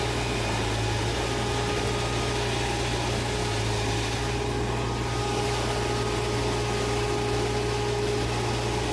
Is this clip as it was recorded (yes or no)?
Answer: yes